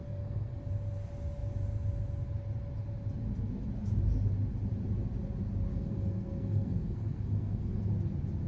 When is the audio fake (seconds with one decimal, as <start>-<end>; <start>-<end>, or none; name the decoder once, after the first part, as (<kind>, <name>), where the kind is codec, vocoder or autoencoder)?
0.0-0.6 (codec, SNAC); 5.7-7.9